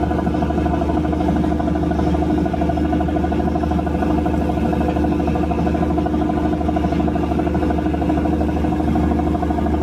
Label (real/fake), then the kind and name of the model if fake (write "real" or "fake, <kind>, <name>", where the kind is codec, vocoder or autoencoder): real